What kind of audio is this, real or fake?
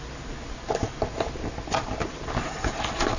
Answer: real